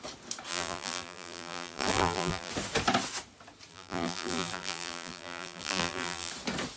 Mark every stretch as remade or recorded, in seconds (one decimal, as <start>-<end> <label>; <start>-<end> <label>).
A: 0.0-0.5 recorded; 0.5-2.5 remade; 2.5-3.7 recorded; 3.7-6.3 remade; 6.3-6.8 recorded